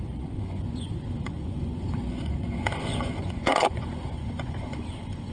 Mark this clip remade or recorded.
remade